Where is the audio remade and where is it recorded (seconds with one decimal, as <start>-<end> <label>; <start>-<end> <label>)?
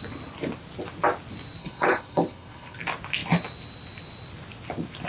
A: 0.0-1.6 recorded; 1.6-2.8 remade; 2.8-5.1 recorded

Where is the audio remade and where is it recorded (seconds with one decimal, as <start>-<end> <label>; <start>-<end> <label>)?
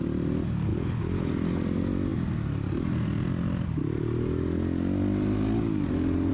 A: 0.0-0.7 recorded; 0.7-1.3 remade; 1.3-6.3 recorded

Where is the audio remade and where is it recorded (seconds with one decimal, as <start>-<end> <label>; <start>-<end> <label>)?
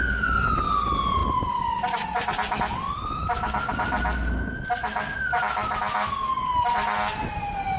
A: 0.0-7.8 recorded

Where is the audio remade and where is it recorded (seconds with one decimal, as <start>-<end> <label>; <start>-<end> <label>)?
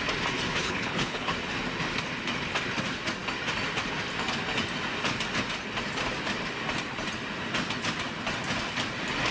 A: 0.0-0.6 recorded; 0.6-1.3 remade; 1.3-9.3 recorded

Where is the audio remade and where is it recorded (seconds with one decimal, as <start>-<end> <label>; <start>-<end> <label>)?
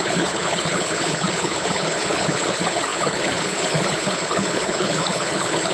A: 0.0-5.7 remade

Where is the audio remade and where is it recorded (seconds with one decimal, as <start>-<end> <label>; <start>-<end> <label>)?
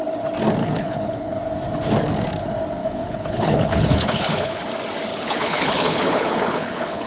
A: 0.0-0.6 recorded; 0.6-1.4 remade; 1.4-2.8 recorded; 2.8-4.6 remade; 4.6-5.1 recorded; 5.1-7.1 remade